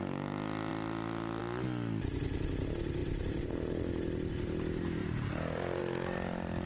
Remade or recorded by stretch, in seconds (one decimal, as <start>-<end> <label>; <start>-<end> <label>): 0.0-0.7 recorded; 0.7-1.4 remade; 1.4-3.0 recorded; 3.0-3.5 remade; 3.5-5.0 recorded; 5.0-5.8 remade; 5.8-6.7 recorded